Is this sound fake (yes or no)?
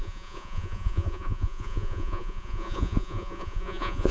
yes